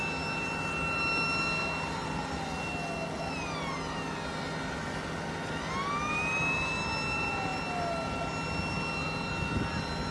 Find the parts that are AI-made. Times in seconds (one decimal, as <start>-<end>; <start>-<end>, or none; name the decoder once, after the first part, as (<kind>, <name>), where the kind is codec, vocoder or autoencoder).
none